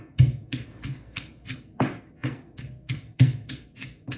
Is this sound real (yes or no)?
no